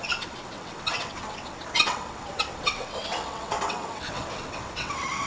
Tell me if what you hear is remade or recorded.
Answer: remade